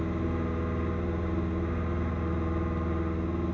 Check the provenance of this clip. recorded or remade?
recorded